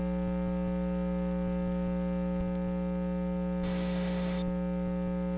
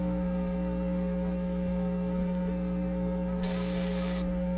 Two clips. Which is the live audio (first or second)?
first